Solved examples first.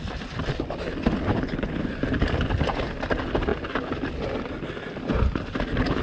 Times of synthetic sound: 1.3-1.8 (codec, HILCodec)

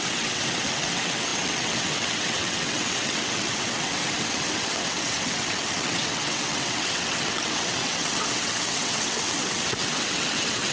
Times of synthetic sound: 0.0-10.7 (vocoder, WaveNeXt)